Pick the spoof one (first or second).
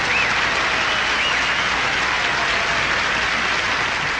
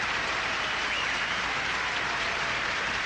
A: second